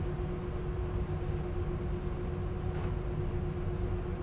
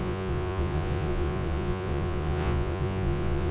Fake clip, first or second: second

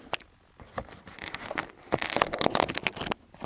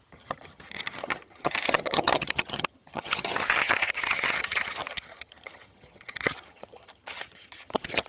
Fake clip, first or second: second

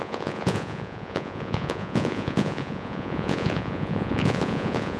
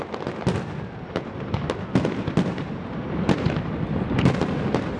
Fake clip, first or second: first